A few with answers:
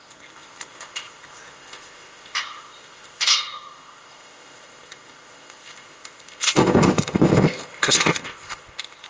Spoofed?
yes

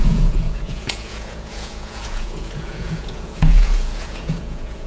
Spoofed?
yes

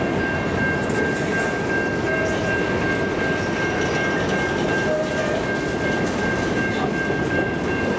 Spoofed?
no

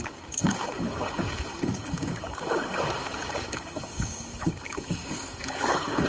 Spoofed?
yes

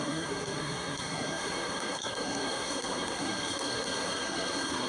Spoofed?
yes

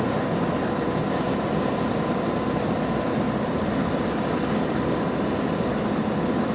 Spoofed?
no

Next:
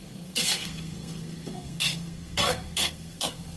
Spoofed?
yes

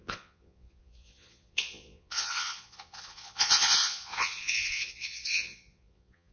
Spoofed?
yes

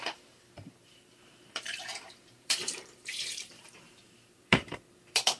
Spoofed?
yes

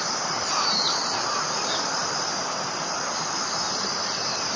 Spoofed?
no